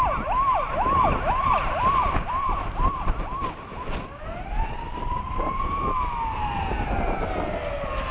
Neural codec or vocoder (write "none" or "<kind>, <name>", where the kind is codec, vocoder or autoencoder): none